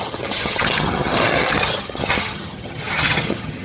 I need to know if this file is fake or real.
fake